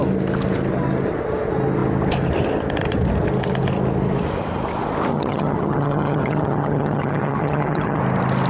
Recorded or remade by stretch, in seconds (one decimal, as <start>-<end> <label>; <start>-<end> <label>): 0.0-5.1 recorded; 5.1-8.0 remade; 8.0-8.5 recorded